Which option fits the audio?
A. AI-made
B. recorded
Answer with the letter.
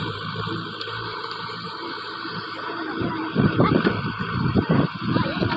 A